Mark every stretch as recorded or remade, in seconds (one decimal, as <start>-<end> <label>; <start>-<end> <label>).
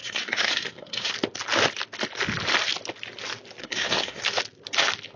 0.0-1.1 remade; 1.1-3.6 recorded; 3.6-4.2 remade; 4.2-5.2 recorded